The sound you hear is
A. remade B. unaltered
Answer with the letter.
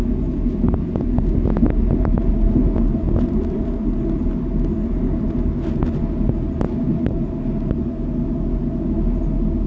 B